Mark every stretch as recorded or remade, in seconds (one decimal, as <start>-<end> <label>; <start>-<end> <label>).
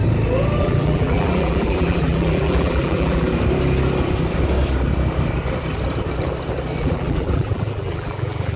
0.0-0.6 recorded; 0.6-3.3 remade; 3.3-6.8 recorded; 6.8-8.6 remade